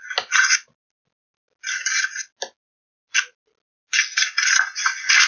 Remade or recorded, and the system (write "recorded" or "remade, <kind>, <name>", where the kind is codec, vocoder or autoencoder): recorded